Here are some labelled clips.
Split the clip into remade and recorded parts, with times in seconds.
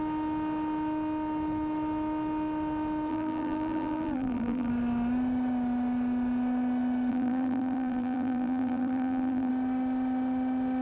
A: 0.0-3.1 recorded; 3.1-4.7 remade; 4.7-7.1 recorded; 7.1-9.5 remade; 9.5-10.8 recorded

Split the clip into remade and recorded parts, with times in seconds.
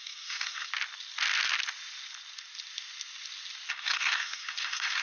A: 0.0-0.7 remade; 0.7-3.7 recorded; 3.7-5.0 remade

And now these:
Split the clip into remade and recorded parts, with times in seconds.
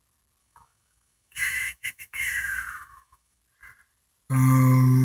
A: 0.0-0.4 recorded; 0.4-3.4 remade; 3.4-5.0 recorded